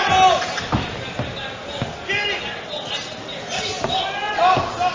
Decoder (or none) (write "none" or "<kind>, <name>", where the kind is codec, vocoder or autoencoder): none